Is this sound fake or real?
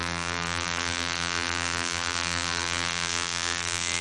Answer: fake